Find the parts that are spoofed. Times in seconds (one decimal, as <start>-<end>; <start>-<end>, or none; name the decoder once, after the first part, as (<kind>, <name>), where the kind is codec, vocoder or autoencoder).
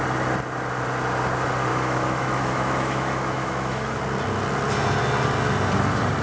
1.7-4.0 (autoencoder, DAC-VAE)